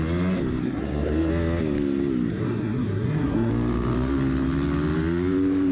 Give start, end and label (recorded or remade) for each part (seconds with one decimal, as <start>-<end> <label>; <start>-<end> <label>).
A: 0.0-0.6 recorded; 0.6-1.3 remade; 1.3-2.3 recorded; 2.3-3.5 remade; 3.5-5.7 recorded